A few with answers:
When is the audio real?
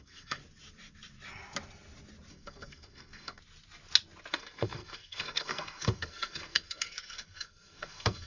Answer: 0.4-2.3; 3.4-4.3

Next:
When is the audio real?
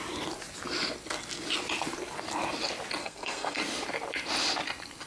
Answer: 0.0-3.0; 3.6-5.1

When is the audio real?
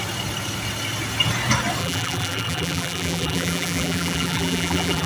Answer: 0.0-1.8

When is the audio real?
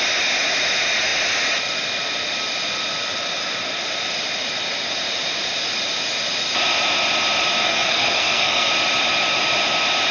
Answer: 0.0-7.6; 8.7-10.1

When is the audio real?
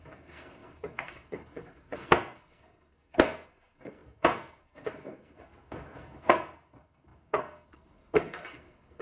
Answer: none